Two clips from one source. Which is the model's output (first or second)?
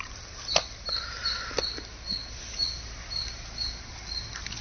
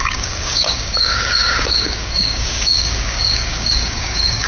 second